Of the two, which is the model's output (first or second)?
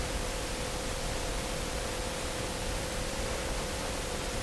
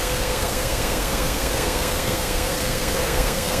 second